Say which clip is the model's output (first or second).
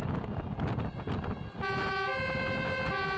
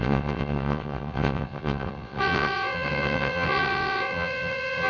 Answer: second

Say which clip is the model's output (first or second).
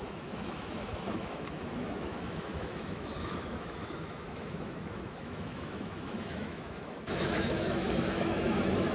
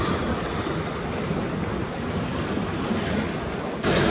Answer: first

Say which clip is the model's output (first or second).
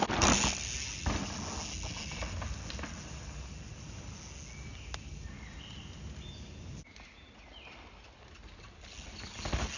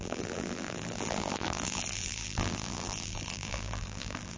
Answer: second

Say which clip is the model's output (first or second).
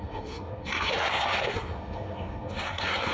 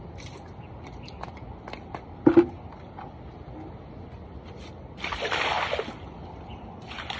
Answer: first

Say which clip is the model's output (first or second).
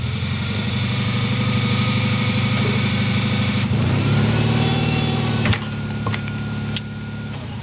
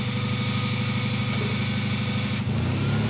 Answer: first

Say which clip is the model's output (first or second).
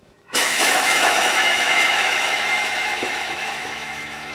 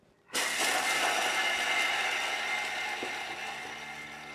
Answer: first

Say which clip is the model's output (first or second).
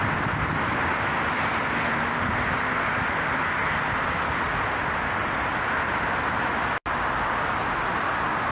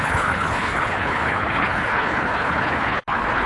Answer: second